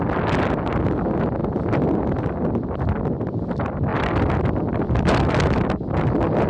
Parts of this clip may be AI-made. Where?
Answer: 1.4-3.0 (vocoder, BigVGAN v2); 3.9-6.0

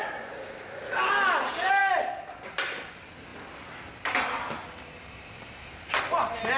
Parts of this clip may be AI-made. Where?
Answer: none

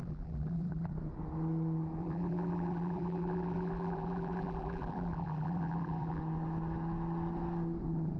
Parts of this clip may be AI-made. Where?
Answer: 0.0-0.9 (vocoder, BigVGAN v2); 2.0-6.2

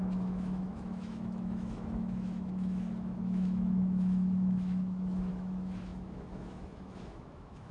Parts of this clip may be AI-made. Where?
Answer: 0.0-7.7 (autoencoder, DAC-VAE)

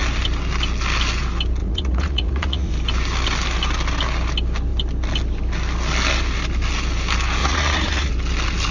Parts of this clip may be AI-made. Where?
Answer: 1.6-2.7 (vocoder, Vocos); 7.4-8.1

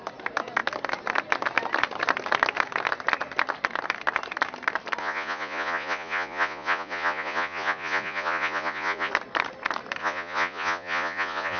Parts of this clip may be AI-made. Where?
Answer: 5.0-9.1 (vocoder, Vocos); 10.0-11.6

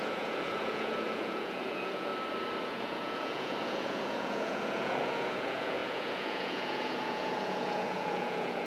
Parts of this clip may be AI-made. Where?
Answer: 0.0-2.1 (vocoder, Vocos); 2.7-8.7